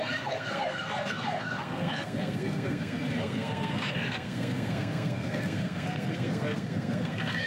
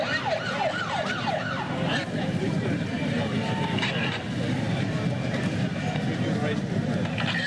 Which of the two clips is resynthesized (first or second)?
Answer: first